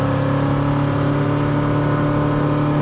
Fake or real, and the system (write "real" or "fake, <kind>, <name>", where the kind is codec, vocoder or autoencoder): real